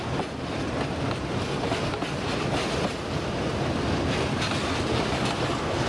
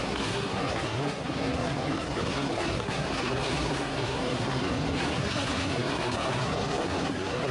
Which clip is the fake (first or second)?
second